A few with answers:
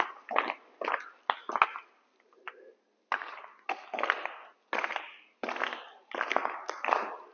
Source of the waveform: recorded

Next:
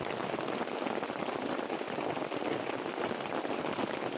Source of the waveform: recorded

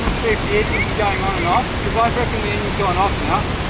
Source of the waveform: recorded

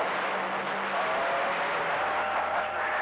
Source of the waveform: recorded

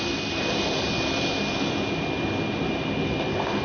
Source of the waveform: recorded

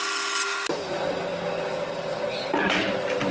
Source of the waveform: recorded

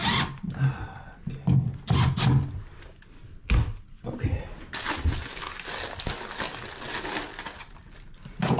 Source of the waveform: recorded